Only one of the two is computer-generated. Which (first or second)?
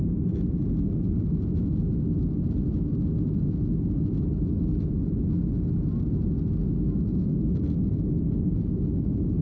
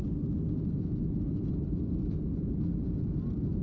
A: second